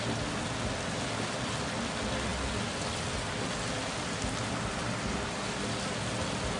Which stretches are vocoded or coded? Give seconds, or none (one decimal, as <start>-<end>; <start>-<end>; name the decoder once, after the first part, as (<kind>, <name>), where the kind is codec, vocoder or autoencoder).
none